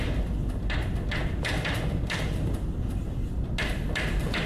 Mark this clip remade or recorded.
recorded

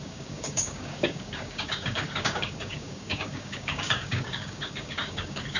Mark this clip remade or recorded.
remade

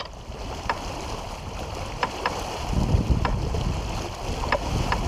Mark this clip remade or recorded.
recorded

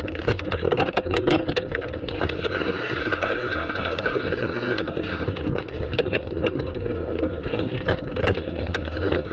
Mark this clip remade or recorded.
remade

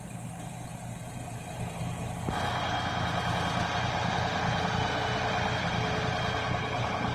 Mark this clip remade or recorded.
recorded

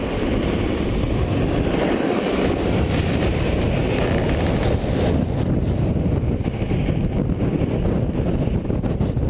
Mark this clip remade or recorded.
recorded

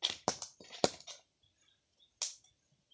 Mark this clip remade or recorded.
recorded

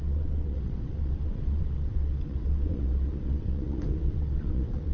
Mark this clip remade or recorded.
remade